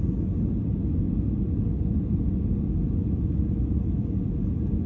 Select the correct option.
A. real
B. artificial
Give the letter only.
A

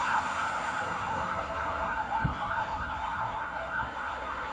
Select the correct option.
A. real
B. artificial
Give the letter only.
B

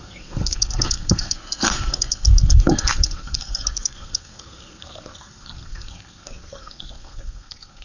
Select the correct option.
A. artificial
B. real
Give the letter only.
A